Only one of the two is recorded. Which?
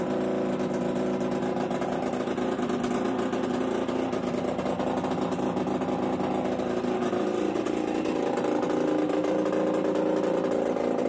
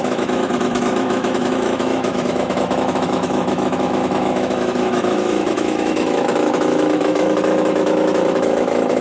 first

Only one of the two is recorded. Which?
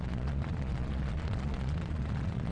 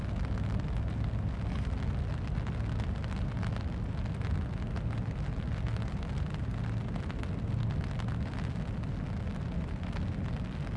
second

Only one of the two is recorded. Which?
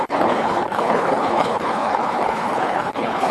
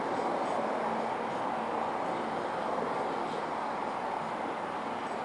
second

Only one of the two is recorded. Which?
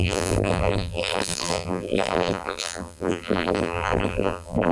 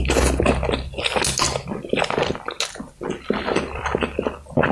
second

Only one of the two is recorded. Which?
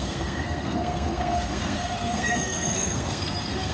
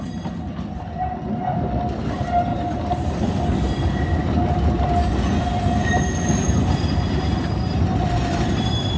second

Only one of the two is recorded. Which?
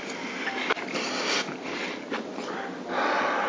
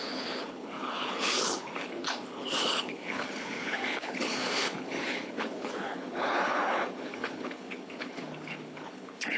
first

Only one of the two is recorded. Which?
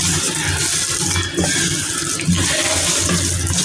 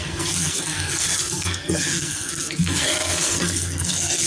first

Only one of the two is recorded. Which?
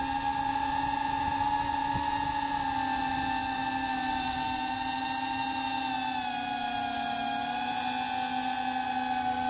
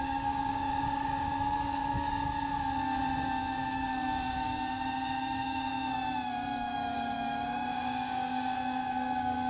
first